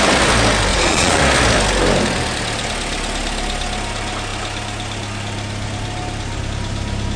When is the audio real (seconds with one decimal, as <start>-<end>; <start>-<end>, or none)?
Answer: 0.0-0.7; 1.2-7.2